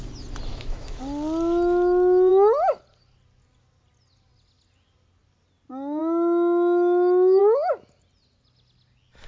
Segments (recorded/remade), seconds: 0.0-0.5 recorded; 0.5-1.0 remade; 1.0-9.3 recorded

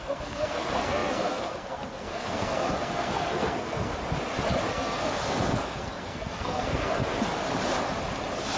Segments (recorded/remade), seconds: 0.0-3.9 remade; 3.9-4.7 recorded; 4.7-7.0 remade; 7.0-8.6 recorded